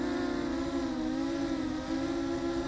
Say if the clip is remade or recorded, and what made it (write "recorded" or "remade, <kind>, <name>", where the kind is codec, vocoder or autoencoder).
recorded